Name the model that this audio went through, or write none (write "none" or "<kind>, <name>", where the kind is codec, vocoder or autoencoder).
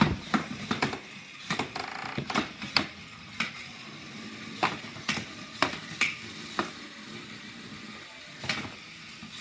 none